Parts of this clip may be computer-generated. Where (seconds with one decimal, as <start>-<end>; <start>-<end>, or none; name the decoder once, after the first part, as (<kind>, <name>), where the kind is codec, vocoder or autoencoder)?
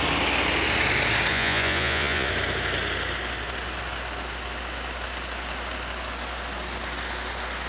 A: 1.3-2.3 (vocoder, Vocos)